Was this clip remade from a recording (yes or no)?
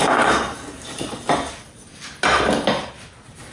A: no